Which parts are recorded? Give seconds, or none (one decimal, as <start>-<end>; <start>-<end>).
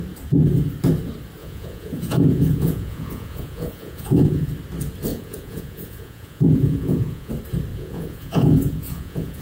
0.0-1.4; 4.5-5.1; 7.3-7.7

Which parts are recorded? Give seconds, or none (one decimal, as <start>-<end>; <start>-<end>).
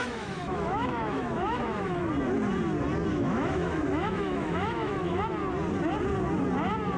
2.1-3.1; 5.2-7.0